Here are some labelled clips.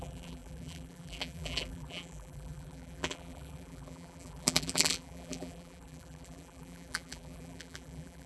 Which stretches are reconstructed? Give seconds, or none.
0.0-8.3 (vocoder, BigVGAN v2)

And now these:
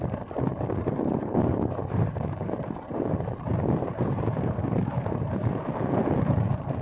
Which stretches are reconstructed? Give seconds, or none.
1.5-5.6 (vocoder, BigVGAN v2)

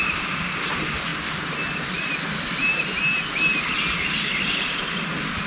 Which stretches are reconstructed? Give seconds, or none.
none

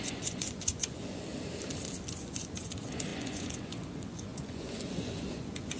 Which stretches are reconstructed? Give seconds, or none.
0.0-1.3 (vocoder, Vocos); 2.1-5.8

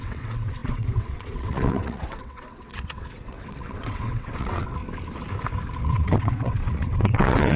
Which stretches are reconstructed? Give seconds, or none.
0.0-4.8 (vocoder, WaveNeXt); 5.8-7.6

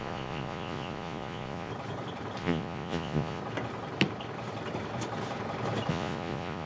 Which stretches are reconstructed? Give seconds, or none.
0.0-1.7 (vocoder, Vocos); 2.4-3.4; 5.9-6.7